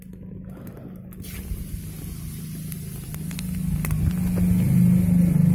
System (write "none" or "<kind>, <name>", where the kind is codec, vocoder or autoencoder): none